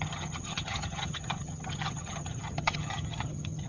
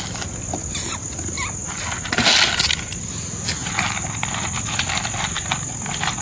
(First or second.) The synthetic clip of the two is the first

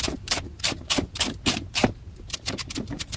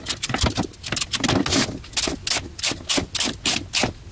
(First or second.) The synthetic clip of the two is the first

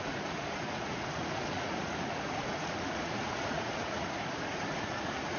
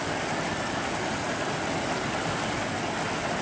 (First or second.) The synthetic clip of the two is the first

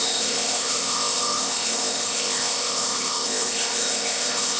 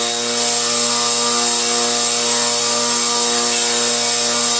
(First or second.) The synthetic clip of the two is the first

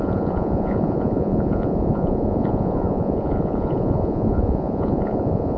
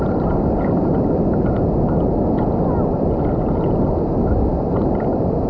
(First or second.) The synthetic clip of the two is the first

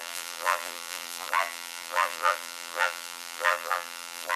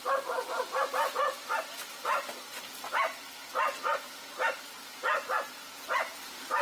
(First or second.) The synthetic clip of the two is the first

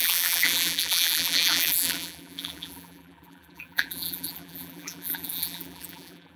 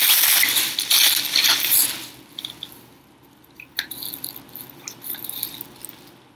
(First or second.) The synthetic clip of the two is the first